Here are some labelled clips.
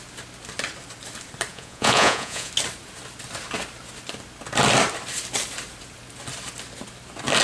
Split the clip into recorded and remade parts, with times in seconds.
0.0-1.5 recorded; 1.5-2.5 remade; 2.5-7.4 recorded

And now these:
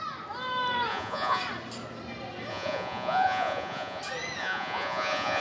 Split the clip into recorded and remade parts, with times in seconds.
0.0-0.9 recorded; 0.9-1.4 remade; 1.4-2.5 recorded; 2.5-4.0 remade; 4.0-4.4 recorded; 4.4-5.4 remade

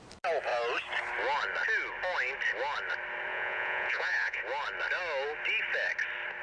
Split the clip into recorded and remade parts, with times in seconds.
0.0-3.3 recorded; 3.3-4.4 remade; 4.4-6.4 recorded

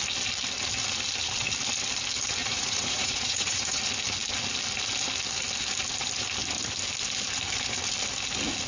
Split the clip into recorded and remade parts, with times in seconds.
0.0-2.4 recorded; 2.4-3.8 remade; 3.8-8.7 recorded

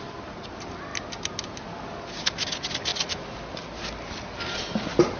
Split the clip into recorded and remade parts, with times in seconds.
0.0-5.2 recorded